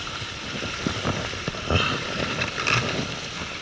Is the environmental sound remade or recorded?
recorded